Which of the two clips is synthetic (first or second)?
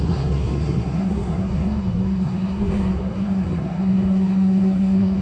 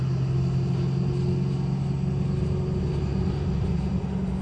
first